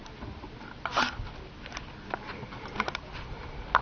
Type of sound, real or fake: real